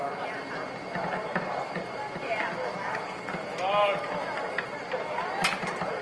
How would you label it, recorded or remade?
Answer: recorded